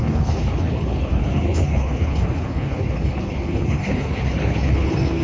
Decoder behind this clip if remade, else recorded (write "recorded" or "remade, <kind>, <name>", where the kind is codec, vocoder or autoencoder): remade, codec, HILCodec